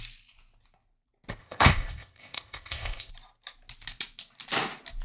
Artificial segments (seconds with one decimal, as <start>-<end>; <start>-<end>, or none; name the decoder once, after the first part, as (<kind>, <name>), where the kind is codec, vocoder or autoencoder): 1.4-3.1 (codec, ZipCodec)

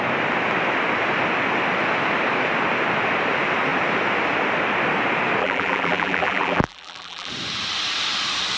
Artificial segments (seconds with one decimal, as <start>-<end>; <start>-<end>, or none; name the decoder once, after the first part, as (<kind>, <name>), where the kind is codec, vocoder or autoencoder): 5.4-7.3 (vocoder, BigVGAN v2)

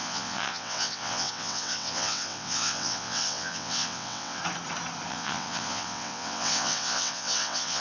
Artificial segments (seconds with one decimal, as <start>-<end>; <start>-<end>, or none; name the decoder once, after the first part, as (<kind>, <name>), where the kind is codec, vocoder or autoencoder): 0.0-4.4 (vocoder, WaveNeXt); 5.1-7.8

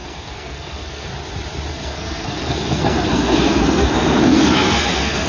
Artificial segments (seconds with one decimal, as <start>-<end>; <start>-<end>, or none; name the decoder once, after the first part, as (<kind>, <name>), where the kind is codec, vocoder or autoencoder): 0.0-1.1 (codec, SNAC); 1.7-5.3

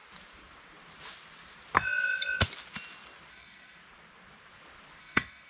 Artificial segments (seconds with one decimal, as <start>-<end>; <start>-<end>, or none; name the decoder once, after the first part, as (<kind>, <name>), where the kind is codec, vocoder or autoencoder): 3.3-3.8 (codec, SNAC); 5.0-5.5

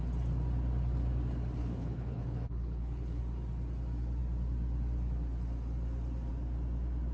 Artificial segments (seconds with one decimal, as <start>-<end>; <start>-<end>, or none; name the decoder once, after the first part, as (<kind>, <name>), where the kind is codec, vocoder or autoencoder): 1.6-3.2 (codec, HILCodec)

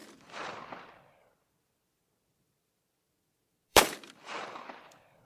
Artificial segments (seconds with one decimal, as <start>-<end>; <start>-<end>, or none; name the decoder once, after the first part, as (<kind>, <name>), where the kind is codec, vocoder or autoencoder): 0.0-0.6 (vocoder, BigVGAN v2); 3.7-5.3